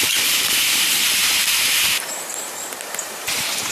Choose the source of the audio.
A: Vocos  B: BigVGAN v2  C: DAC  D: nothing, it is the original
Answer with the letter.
B